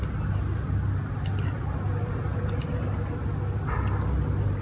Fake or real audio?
real